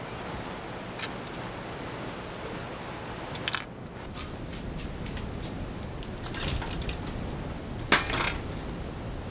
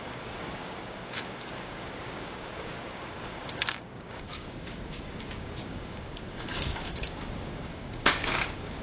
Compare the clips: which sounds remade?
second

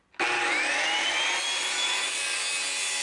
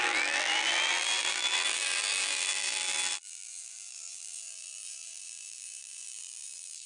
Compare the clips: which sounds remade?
second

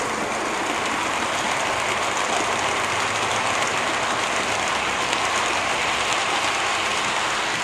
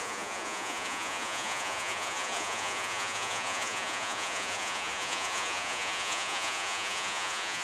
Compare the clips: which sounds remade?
second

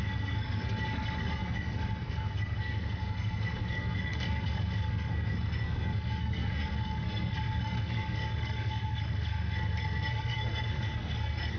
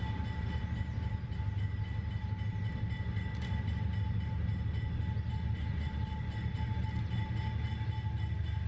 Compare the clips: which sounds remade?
first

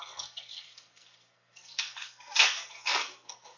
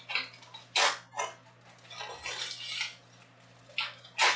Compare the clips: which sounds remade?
first